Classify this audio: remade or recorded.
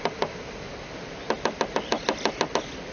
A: recorded